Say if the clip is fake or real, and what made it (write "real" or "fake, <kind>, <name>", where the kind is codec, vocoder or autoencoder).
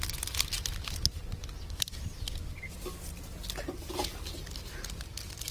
real